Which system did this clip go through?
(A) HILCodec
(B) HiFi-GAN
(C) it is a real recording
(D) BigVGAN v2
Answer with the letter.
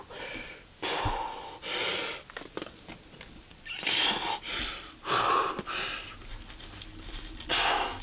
C